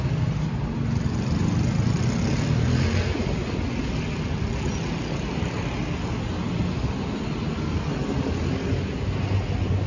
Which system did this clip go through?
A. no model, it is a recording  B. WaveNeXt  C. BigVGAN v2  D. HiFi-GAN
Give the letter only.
A